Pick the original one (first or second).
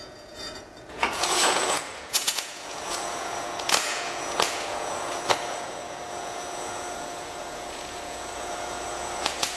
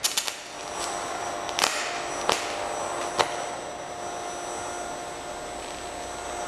second